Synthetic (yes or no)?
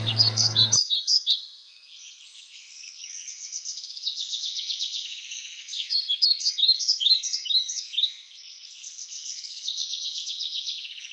yes